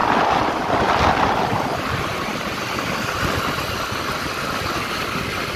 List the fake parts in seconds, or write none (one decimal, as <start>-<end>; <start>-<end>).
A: none